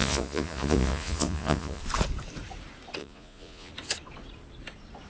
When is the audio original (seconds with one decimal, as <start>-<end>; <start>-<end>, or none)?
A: 1.8-3.0; 3.7-5.1

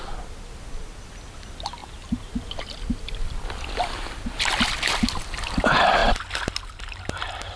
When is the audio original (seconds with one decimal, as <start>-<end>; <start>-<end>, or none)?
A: 0.0-7.6

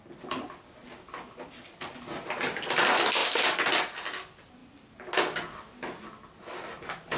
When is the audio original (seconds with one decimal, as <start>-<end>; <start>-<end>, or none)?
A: 0.0-7.2

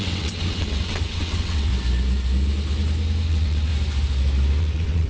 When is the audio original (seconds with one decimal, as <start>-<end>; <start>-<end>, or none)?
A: 1.7-3.3; 3.7-4.6

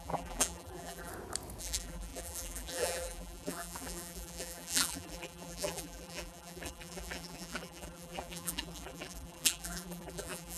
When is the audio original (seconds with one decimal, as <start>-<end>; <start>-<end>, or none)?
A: 1.1-1.6

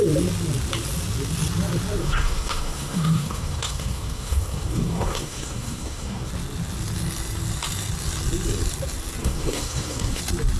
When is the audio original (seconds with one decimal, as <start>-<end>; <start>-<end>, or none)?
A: 0.0-2.0; 6.3-9.2; 10.2-10.6